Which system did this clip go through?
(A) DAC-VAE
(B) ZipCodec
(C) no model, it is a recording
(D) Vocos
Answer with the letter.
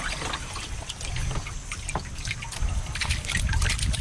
C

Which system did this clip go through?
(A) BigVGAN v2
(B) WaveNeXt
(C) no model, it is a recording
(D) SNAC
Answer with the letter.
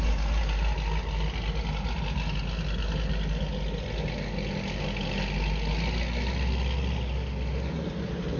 C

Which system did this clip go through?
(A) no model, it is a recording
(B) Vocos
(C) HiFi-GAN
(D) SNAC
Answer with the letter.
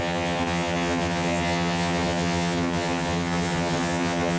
C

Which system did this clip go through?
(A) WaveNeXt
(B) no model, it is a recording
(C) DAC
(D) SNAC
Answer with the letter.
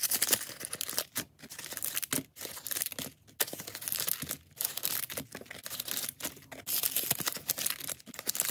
B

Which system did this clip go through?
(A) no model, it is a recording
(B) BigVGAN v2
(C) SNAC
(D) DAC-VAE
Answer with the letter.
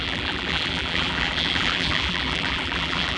B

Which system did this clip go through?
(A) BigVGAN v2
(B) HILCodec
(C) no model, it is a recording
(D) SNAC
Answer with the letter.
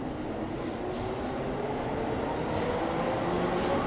C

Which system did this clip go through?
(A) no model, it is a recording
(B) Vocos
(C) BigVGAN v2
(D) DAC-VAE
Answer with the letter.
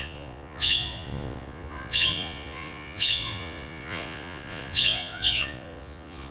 B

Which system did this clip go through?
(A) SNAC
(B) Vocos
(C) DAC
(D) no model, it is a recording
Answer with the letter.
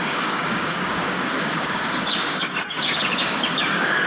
C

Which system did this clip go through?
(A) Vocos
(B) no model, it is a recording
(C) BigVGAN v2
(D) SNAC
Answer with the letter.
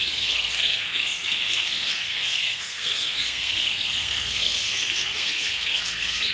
D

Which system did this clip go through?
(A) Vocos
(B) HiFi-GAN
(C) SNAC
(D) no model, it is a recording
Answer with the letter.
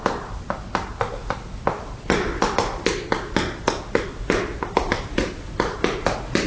D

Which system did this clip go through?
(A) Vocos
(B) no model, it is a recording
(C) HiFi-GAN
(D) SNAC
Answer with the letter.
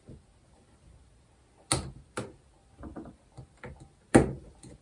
B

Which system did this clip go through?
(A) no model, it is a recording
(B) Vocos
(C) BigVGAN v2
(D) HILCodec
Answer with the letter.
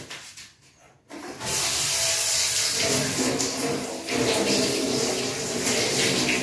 A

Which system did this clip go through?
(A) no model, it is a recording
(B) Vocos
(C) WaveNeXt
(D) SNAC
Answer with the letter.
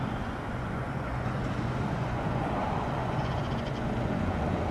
B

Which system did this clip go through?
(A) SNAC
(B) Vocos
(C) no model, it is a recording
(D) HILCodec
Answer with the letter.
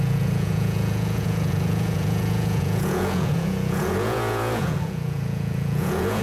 B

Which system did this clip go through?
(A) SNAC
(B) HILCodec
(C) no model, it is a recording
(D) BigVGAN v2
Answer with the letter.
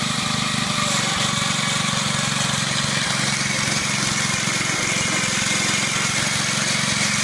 C